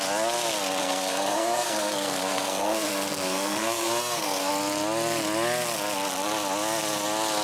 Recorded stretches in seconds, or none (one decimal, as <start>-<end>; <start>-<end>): 0.0-0.8; 4.5-7.4